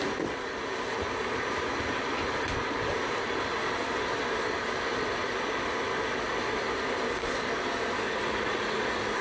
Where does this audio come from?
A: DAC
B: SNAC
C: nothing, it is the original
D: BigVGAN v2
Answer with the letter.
C